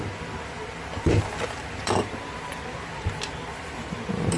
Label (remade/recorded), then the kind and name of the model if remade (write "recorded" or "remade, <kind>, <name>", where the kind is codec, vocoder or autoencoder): remade, vocoder, BigVGAN v2